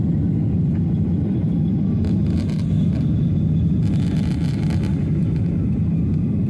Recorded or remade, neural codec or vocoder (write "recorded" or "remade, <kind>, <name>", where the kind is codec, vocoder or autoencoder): recorded